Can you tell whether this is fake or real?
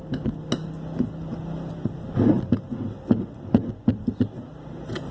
real